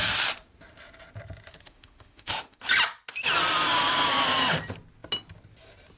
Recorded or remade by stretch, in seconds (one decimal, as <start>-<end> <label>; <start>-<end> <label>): 0.0-1.7 recorded; 1.7-2.6 remade; 2.6-6.0 recorded